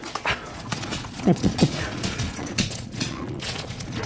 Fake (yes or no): yes